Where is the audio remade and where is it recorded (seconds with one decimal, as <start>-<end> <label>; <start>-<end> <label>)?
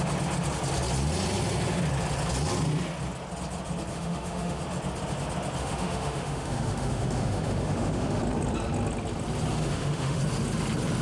0.0-3.9 recorded; 3.9-4.6 remade; 4.6-5.6 recorded; 5.6-8.2 remade; 8.2-9.5 recorded; 9.5-10.2 remade; 10.2-11.0 recorded